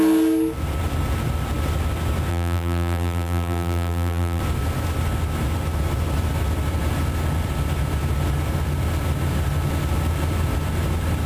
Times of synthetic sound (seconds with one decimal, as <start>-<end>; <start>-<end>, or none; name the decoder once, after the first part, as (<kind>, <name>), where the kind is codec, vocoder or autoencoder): 2.3-4.4 (vocoder, BigVGAN v2)